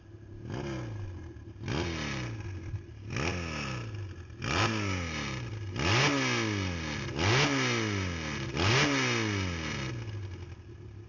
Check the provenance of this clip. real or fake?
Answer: real